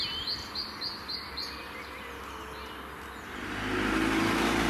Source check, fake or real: real